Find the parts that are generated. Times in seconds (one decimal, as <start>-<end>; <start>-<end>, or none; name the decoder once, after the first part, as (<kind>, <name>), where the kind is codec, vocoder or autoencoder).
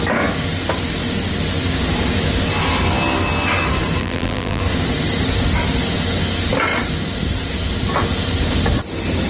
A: 4.0-4.6 (vocoder, BigVGAN v2)